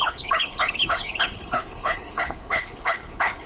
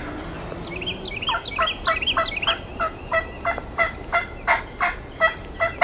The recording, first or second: second